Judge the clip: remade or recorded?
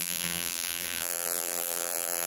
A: remade